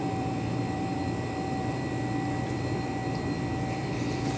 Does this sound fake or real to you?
fake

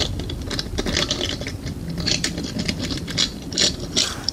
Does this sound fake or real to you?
real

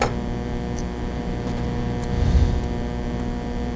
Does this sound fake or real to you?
real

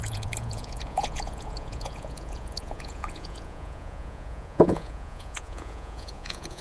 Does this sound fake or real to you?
fake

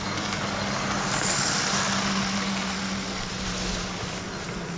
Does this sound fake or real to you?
real